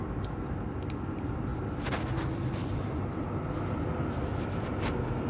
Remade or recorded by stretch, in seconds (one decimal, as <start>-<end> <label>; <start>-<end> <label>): 0.0-4.3 recorded; 4.3-4.8 remade; 4.8-5.3 recorded